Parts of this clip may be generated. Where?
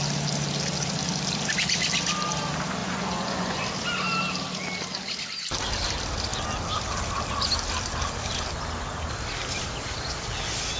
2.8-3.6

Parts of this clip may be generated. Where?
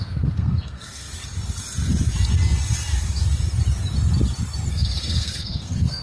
0.0-1.1; 4.7-6.0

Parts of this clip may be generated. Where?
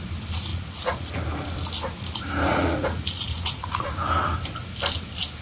0.5-1.1; 2.5-4.1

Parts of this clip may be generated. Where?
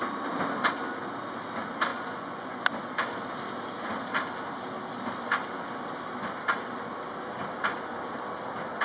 1.9-2.6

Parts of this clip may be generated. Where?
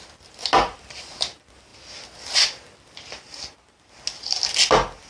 none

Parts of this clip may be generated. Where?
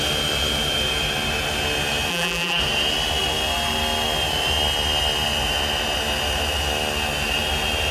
2.1-2.6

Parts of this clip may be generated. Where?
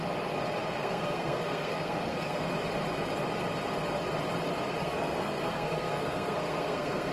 0.8-2.4; 4.8-7.1